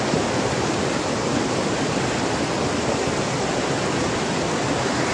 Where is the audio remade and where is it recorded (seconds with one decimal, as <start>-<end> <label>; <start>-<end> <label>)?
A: 0.0-5.1 recorded